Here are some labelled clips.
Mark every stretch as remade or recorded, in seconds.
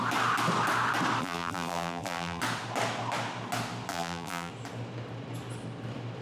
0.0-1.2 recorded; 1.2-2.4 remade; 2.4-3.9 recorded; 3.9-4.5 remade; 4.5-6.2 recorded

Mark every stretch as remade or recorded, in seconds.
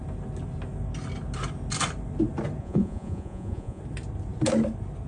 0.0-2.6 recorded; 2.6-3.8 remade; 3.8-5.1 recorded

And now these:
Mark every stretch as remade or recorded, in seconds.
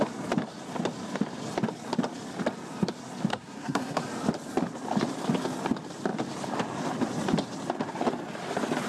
0.0-3.3 recorded; 3.3-4.0 remade; 4.0-8.9 recorded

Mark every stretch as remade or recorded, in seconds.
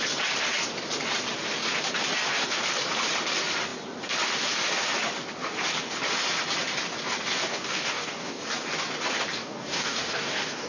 0.0-7.4 recorded; 7.4-8.4 remade; 8.4-9.4 recorded; 9.4-10.7 remade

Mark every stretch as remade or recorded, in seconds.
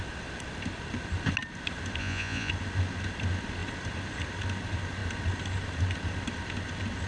0.0-2.0 recorded; 2.0-2.5 remade; 2.5-7.1 recorded